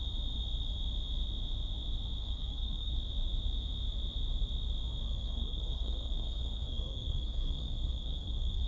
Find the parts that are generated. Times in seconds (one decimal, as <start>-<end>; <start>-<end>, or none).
2.2-2.9; 5.0-8.7